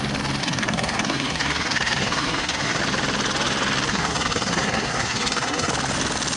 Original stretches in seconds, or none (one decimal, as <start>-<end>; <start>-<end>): 0.0-0.4; 2.8-3.9; 5.7-6.4